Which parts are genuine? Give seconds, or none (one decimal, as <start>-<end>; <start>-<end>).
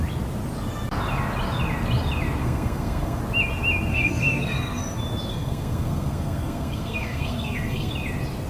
0.0-2.4; 3.2-3.9; 4.8-5.3; 7.9-8.5